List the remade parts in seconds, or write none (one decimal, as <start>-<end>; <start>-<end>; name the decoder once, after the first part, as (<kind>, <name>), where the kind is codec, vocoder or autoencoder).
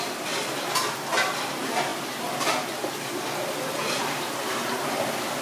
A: none